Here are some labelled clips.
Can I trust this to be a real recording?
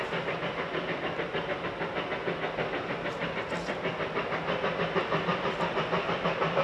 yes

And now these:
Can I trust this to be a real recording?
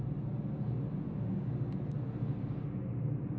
yes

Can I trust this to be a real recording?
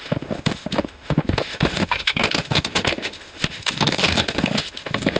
no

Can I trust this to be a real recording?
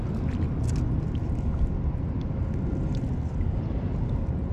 yes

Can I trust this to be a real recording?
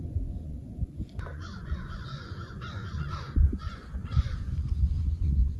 no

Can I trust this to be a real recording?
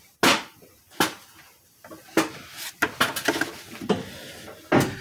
yes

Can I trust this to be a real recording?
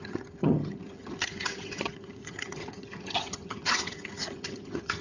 no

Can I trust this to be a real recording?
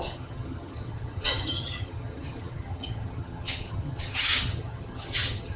no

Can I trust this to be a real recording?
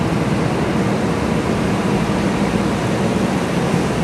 yes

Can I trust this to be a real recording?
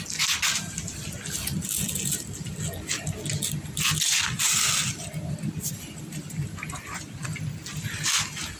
yes